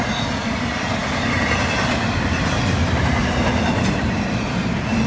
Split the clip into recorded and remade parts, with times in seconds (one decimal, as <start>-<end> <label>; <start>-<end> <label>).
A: 0.0-3.2 remade; 3.2-3.8 recorded; 3.8-5.1 remade